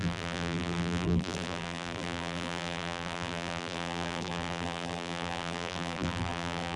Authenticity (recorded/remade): remade